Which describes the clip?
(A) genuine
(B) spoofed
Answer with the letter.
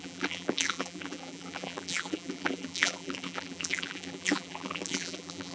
B